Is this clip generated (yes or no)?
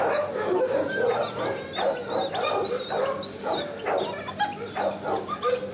no